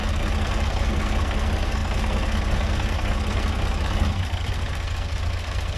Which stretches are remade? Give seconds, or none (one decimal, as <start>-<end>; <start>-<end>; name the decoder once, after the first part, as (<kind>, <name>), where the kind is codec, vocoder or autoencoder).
0.0-5.8 (codec, SNAC)